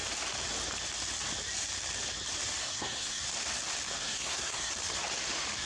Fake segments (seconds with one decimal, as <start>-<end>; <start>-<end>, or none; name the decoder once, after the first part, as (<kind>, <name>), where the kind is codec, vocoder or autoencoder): 2.6-3.2 (codec, SNAC); 4.0-4.7